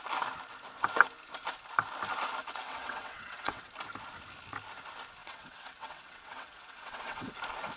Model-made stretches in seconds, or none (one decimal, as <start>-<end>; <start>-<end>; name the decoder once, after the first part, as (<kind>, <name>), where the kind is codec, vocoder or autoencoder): 2.4-3.7 (vocoder, WaveNeXt); 5.2-7.3